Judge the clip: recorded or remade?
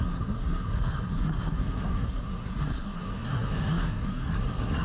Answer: remade